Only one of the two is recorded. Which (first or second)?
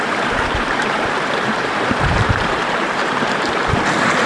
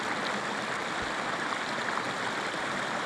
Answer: second